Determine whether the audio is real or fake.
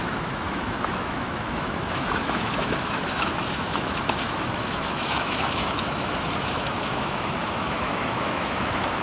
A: fake